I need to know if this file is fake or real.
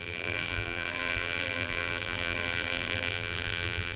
fake